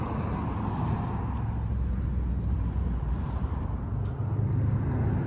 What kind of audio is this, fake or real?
real